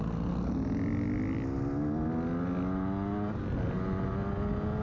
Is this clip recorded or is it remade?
recorded